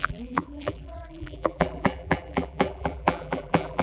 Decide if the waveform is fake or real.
fake